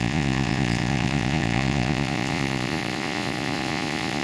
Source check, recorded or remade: remade